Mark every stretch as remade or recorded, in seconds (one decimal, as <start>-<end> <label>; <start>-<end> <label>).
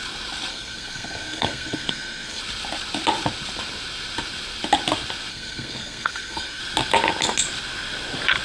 0.0-0.5 recorded; 0.5-2.4 remade; 2.4-5.3 recorded; 5.3-6.6 remade; 6.6-8.4 recorded